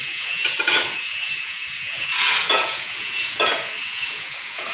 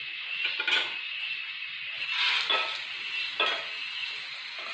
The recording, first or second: second